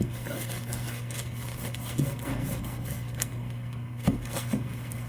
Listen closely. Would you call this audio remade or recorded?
remade